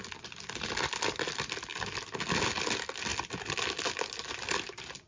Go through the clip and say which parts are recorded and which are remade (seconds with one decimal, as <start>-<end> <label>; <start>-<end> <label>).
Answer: 0.0-5.1 recorded